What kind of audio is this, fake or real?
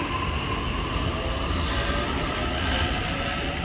real